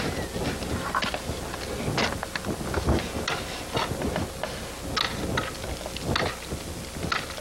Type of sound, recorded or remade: recorded